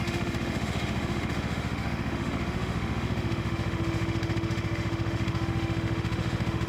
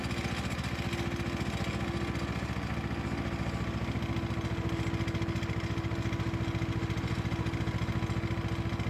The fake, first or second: first